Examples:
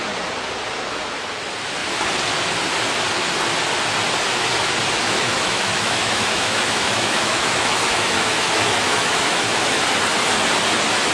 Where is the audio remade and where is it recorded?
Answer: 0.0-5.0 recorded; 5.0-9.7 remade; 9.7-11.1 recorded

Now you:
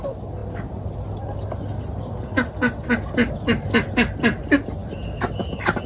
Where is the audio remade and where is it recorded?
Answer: 0.0-5.9 recorded